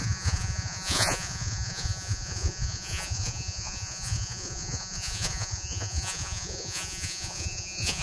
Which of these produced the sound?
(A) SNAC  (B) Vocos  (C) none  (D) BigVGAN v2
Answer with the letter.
B